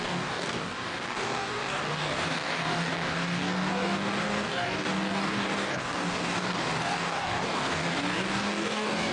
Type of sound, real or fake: fake